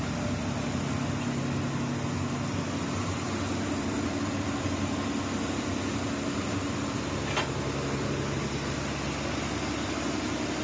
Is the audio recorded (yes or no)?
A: yes